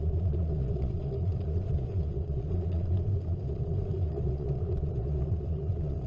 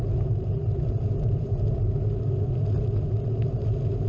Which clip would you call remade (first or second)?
first